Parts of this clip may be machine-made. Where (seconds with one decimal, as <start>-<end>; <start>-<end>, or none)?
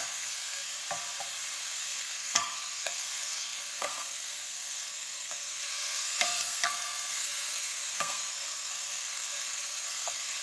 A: 0.0-0.8; 1.6-10.4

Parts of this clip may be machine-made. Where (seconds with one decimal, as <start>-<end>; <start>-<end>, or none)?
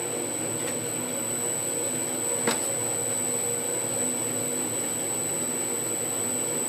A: none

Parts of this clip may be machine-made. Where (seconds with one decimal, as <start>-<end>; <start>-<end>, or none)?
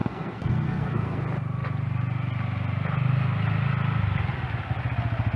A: 0.0-1.2